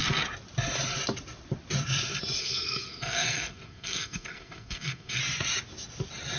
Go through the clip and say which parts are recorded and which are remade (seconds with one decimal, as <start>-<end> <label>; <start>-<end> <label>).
0.0-2.4 recorded; 2.4-5.2 remade; 5.2-6.4 recorded